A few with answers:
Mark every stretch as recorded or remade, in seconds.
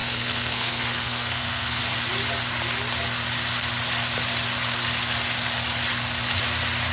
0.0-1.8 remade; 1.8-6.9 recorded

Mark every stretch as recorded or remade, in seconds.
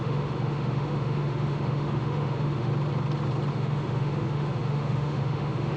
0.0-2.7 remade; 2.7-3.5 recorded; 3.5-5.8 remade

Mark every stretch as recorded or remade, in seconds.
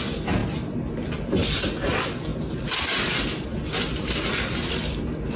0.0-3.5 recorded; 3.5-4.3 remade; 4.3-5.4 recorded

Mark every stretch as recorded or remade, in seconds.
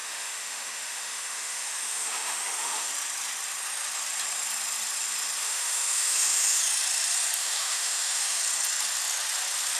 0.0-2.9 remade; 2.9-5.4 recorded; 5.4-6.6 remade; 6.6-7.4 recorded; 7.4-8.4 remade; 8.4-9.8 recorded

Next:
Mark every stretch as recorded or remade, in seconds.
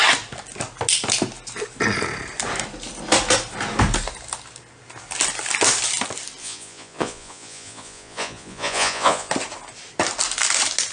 0.0-6.4 recorded; 6.4-9.3 remade; 9.3-10.9 recorded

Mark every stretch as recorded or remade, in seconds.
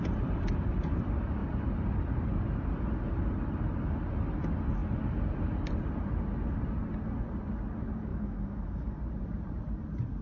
0.0-8.1 recorded; 8.1-9.0 remade; 9.0-10.2 recorded